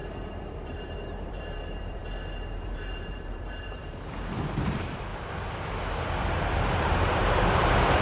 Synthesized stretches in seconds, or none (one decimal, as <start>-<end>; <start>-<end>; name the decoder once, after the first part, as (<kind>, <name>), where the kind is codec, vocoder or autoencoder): 0.0-2.0 (vocoder, BigVGAN v2); 2.5-5.1; 6.8-8.0